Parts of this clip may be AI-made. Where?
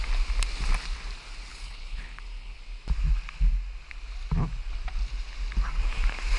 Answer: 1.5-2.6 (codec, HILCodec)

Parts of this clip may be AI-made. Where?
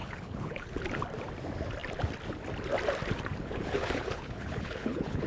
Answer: 0.0-0.8 (codec, HILCodec); 3.4-5.3